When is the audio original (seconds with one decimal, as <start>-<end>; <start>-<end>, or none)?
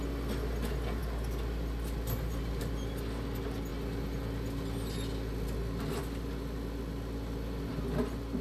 0.0-8.4